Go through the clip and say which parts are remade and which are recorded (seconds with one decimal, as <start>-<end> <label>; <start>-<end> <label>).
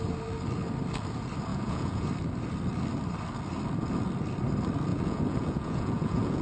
0.0-1.5 recorded; 1.5-2.1 remade; 2.1-4.9 recorded; 4.9-6.4 remade